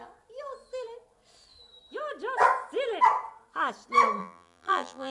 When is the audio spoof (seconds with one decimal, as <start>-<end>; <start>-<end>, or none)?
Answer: 4.2-5.1